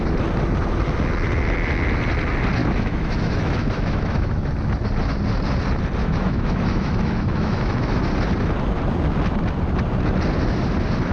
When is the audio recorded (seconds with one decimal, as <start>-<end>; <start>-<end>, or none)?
0.0-2.6; 4.5-6.0; 8.0-11.1